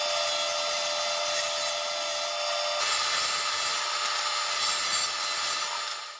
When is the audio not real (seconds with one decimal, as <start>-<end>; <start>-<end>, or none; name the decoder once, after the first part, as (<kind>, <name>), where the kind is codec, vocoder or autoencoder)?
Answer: none